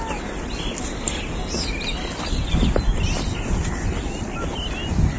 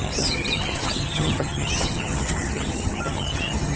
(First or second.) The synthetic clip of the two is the second